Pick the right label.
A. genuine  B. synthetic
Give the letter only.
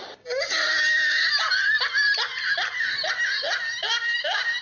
A